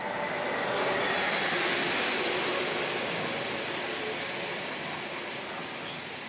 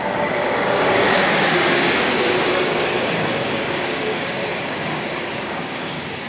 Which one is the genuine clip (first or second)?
first